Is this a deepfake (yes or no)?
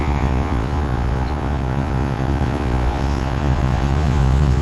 yes